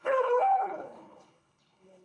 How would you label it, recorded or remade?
remade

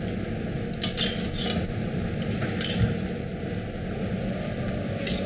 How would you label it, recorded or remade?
recorded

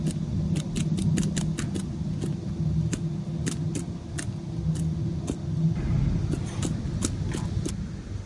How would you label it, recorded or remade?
recorded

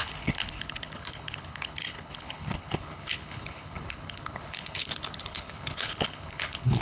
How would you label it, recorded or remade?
remade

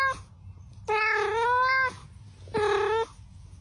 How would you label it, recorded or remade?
recorded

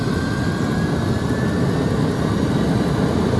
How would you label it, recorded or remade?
recorded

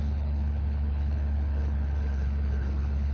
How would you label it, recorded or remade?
remade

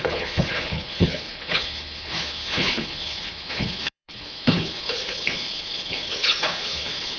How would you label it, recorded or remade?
remade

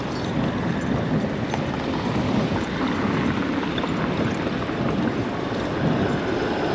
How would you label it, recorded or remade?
recorded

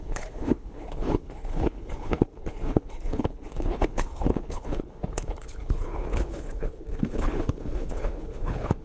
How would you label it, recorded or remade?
remade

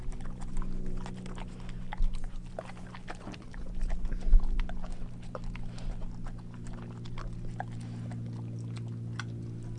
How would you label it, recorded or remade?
recorded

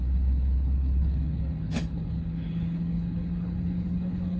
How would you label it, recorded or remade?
remade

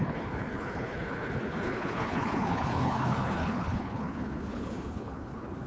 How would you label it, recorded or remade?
remade